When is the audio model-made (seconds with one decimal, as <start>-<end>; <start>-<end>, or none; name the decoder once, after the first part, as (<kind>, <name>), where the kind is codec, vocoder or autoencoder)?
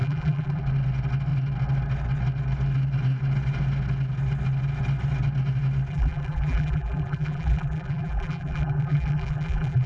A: 0.0-0.6 (vocoder, BigVGAN v2); 5.9-9.9